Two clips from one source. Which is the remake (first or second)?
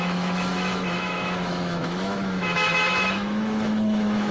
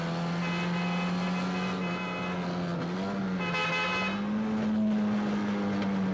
first